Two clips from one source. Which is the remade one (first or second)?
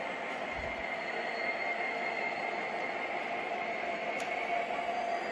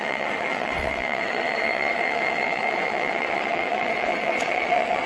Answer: second